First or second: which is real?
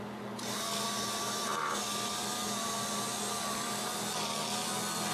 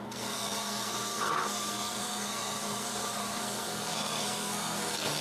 first